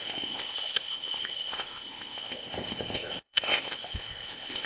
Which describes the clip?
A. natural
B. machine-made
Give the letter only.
B